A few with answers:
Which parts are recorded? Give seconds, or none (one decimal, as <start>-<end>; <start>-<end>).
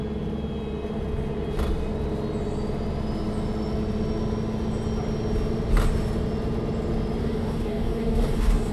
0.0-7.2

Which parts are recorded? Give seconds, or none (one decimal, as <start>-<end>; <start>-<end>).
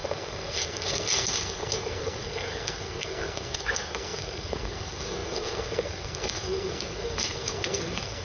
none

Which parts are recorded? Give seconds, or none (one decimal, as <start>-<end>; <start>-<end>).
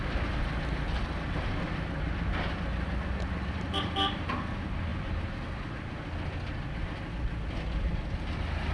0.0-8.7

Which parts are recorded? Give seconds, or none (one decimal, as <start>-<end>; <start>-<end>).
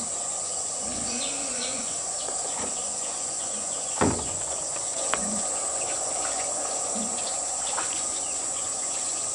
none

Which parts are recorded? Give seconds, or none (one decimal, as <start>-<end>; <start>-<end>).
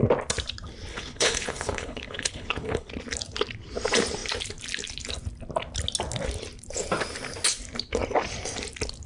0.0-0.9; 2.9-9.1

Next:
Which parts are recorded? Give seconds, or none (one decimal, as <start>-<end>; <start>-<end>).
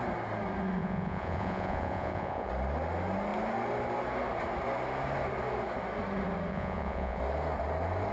0.0-0.8; 2.5-6.5; 7.2-8.1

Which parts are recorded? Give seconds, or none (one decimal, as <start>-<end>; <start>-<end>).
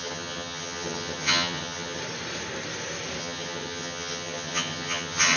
2.0-3.2